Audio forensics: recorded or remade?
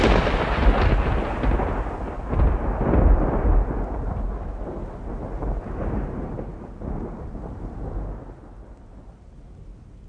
recorded